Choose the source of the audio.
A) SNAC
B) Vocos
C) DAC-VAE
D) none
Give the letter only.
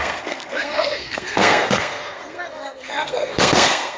A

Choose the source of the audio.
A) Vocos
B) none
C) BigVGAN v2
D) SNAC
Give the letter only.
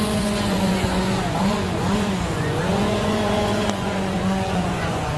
A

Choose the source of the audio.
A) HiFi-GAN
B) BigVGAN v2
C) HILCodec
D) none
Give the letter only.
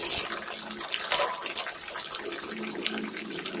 D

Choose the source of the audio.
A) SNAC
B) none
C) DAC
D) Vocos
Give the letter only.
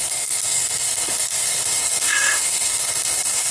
A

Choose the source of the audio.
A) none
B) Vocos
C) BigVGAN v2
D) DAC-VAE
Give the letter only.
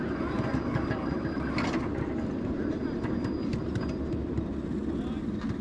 A